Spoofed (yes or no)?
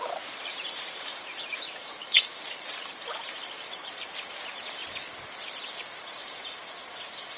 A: yes